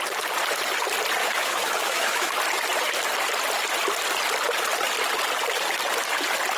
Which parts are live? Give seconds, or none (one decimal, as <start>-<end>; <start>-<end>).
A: 0.0-1.2; 2.3-6.6